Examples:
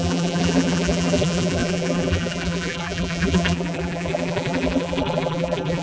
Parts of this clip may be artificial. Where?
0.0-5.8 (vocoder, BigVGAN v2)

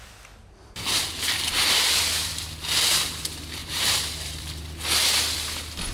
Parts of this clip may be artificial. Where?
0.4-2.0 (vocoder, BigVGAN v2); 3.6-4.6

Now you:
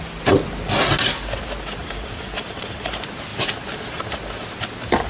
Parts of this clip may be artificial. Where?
1.8-2.9 (vocoder, BigVGAN v2)